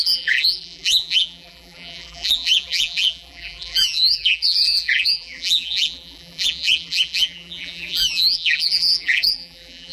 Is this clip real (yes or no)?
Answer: no